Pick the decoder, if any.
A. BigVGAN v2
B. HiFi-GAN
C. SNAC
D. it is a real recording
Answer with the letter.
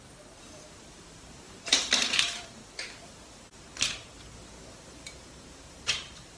A